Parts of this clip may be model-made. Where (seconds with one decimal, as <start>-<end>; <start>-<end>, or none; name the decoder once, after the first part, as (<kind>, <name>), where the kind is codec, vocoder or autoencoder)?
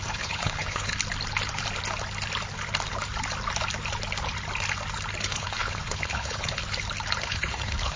0.0-0.9 (codec, HILCodec); 5.3-6.6; 7.2-8.0